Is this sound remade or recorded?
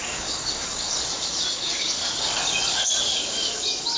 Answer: remade